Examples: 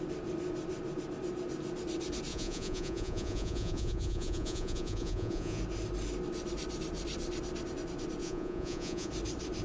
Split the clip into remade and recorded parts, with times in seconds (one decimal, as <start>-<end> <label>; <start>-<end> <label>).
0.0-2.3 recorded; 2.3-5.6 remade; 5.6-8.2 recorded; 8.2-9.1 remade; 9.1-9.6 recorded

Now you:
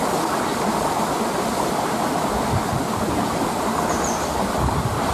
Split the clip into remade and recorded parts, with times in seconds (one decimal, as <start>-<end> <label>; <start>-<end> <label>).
0.0-0.5 recorded; 0.5-2.1 remade; 2.1-5.1 recorded

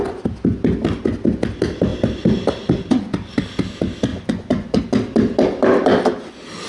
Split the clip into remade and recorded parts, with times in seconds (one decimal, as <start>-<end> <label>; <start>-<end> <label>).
0.0-4.1 recorded; 4.1-4.8 remade; 4.8-6.7 recorded

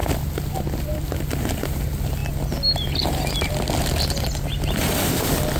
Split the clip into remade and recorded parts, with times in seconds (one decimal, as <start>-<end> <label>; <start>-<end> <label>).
0.0-5.6 recorded

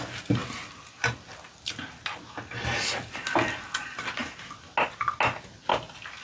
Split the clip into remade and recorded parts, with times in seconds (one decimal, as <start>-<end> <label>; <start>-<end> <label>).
0.0-6.2 recorded

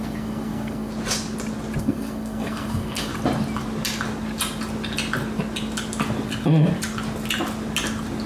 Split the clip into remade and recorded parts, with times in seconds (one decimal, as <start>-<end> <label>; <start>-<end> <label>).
0.0-0.9 remade; 0.9-1.8 recorded; 1.8-3.1 remade; 3.1-8.3 recorded

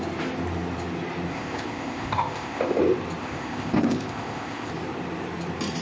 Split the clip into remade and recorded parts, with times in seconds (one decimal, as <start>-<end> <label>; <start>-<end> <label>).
0.0-1.3 recorded; 1.3-2.8 remade; 2.8-3.2 recorded; 3.2-4.7 remade; 4.7-5.8 recorded